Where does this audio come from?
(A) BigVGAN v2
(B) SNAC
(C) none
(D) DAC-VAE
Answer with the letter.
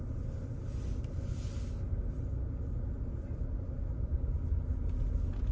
C